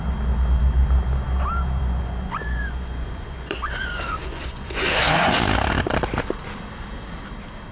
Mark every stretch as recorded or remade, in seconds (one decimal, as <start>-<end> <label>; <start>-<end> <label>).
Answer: 0.0-1.8 recorded; 1.8-5.3 remade; 5.3-7.7 recorded